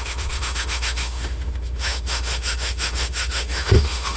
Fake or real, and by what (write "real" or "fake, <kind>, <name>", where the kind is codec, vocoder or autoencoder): fake, autoencoder, DAC-VAE